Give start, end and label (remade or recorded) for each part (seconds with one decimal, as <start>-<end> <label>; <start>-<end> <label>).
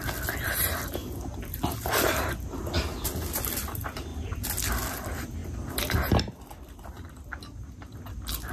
0.0-8.5 recorded